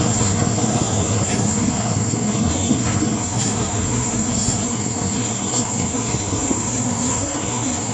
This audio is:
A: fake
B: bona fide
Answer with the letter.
A